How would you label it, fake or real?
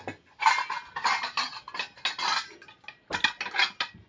real